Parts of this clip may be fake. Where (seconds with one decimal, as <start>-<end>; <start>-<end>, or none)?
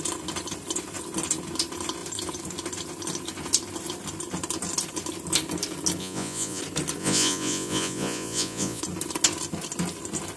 6.0-6.6; 7.0-8.8